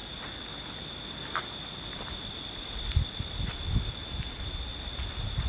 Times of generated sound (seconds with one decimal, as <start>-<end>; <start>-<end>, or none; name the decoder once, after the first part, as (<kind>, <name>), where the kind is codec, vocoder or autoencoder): none